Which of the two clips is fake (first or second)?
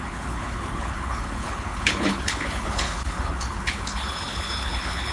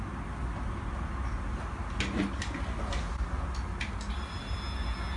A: first